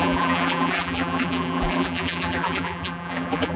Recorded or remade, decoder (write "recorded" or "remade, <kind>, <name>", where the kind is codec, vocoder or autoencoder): remade, vocoder, BigVGAN v2